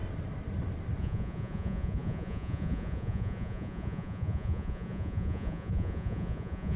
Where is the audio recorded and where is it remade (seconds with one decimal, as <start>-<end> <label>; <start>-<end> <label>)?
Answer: 0.0-1.0 recorded; 1.0-6.8 remade